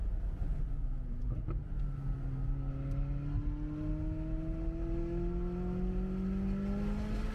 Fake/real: real